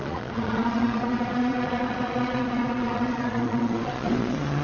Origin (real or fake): fake